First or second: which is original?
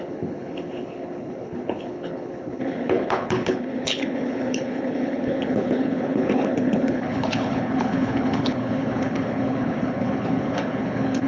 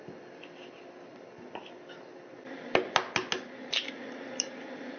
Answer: second